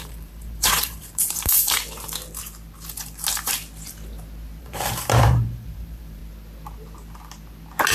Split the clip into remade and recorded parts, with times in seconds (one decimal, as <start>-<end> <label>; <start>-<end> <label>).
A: 0.0-1.8 remade; 1.8-4.6 recorded; 4.6-6.2 remade; 6.2-7.9 recorded